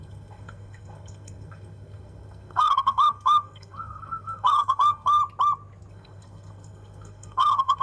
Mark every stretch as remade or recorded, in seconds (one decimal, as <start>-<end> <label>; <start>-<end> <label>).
0.0-5.2 remade; 5.2-5.9 recorded; 5.9-7.8 remade